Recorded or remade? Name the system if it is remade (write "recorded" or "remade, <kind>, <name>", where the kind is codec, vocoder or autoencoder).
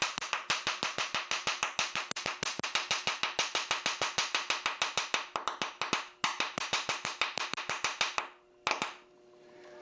recorded